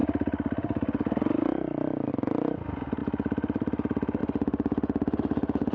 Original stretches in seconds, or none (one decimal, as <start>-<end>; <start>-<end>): 2.1-3.0; 4.2-5.7